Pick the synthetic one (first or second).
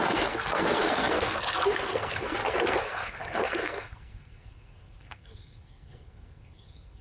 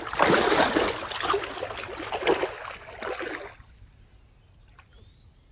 first